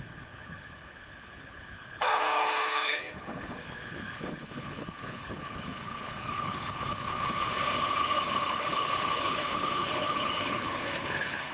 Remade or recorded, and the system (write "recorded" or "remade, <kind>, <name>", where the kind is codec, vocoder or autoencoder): remade, codec, HILCodec